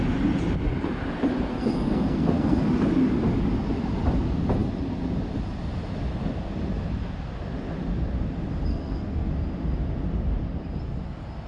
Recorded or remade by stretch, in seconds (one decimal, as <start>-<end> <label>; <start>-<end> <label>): 0.0-1.5 recorded; 1.5-2.6 remade; 2.6-8.7 recorded; 8.7-9.3 remade; 9.3-11.5 recorded